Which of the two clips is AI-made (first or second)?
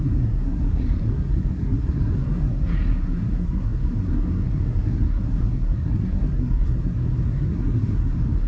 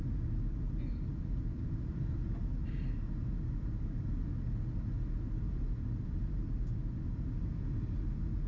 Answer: first